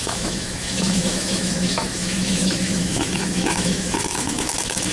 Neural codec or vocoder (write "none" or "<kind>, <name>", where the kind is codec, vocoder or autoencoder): autoencoder, DAC-VAE